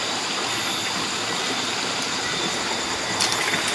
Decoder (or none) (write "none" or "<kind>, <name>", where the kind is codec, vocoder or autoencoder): none